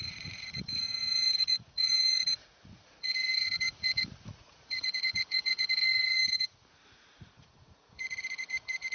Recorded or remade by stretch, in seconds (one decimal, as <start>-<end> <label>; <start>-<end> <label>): 0.0-8.9 remade